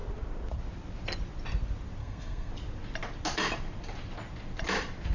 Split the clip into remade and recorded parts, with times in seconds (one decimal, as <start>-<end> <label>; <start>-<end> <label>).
0.0-2.0 recorded; 2.0-2.5 remade; 2.5-5.1 recorded